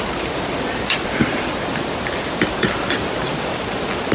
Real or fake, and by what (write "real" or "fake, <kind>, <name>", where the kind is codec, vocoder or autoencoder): real